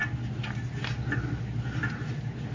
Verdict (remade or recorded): recorded